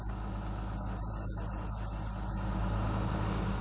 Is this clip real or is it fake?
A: real